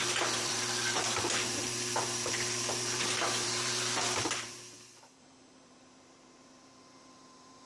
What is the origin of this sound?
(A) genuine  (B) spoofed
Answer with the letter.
B